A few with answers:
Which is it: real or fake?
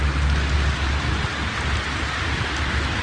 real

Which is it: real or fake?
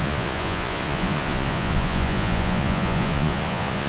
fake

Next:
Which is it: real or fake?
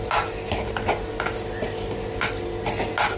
real